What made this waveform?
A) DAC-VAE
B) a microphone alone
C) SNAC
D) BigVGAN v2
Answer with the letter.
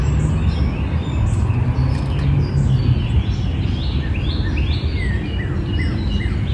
B